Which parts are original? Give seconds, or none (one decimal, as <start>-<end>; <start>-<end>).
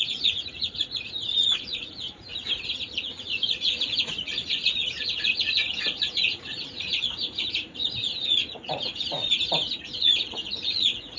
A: 9.2-10.0